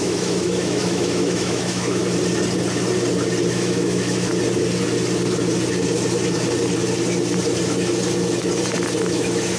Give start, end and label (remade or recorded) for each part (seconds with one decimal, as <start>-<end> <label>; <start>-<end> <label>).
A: 0.0-2.0 remade; 2.0-3.5 recorded; 3.5-4.3 remade; 4.3-9.0 recorded; 9.0-9.6 remade